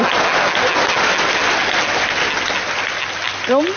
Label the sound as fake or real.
real